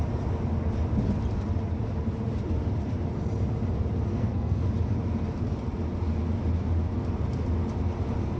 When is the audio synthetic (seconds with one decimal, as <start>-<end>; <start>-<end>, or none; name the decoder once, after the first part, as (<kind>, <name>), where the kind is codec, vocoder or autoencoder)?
4.1-4.6 (codec, SNAC)